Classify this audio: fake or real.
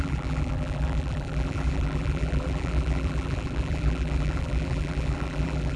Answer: fake